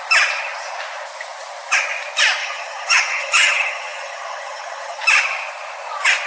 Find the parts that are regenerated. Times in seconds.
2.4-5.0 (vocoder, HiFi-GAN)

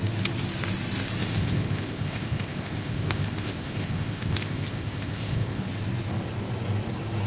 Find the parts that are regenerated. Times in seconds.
1.2-5.6 (codec, ZipCodec)

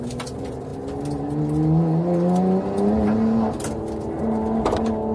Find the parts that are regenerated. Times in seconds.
none

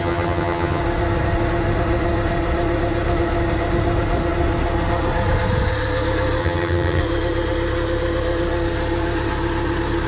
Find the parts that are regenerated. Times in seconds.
0.0-0.8 (vocoder, HiFi-GAN); 6.4-7.0

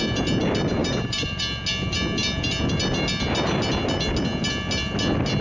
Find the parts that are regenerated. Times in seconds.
0.8-1.4 (vocoder, BigVGAN v2)

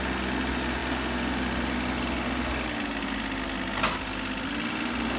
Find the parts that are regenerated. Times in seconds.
none

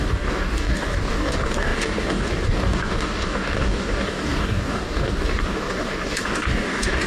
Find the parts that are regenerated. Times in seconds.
0.0-7.1 (codec, DAC)

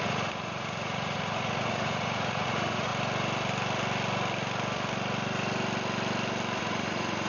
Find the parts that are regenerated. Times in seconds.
0.0-2.9 (vocoder, Vocos); 6.6-7.3